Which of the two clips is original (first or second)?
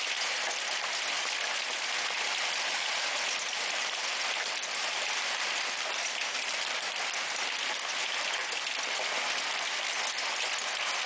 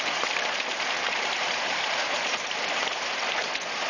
first